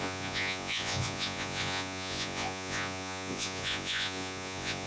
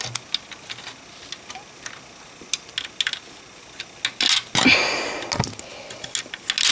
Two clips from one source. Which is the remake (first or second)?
first